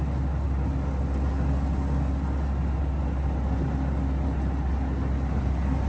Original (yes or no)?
yes